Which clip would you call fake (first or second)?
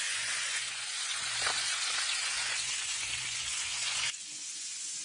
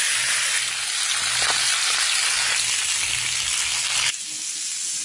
first